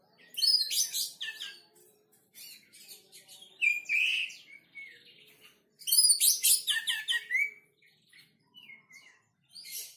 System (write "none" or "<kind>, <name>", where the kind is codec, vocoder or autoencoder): none